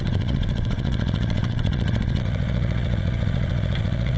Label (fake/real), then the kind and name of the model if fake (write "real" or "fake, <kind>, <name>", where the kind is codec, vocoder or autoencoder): fake, vocoder, WaveNeXt